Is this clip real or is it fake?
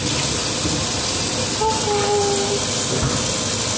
real